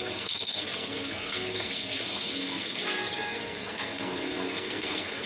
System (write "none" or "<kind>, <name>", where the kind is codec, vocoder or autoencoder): codec, SNAC